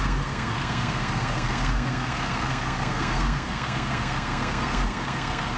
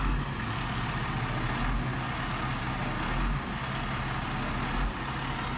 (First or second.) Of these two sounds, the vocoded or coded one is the first